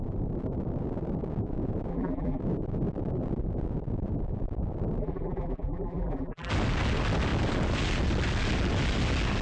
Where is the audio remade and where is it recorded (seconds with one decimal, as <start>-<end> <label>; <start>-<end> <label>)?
0.0-1.9 recorded; 1.9-2.4 remade; 2.4-5.0 recorded; 5.0-6.5 remade; 6.5-9.4 recorded

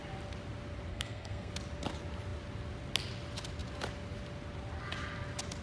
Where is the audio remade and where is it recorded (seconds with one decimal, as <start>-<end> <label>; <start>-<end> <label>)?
0.0-0.9 recorded; 0.9-1.5 remade; 1.5-5.6 recorded

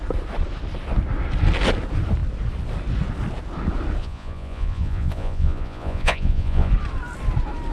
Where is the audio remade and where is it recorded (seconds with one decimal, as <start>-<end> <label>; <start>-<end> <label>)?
0.0-4.0 recorded; 4.0-6.7 remade; 6.7-7.7 recorded